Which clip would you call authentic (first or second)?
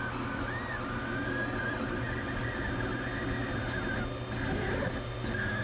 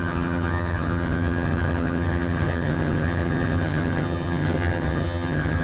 first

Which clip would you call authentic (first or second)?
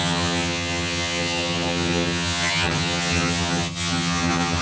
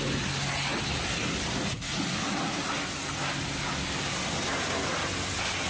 second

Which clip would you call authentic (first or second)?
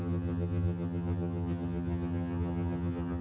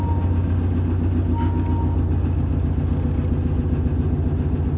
second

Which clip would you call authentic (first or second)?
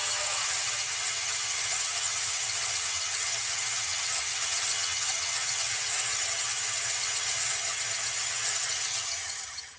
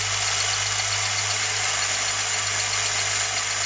second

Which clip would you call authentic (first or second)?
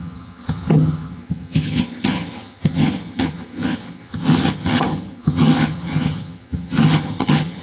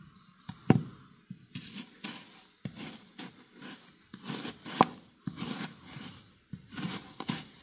second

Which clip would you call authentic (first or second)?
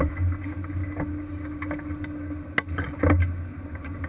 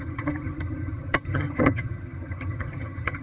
first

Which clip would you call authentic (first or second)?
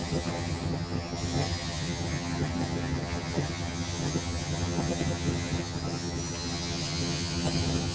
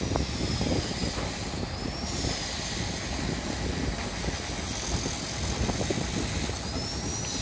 second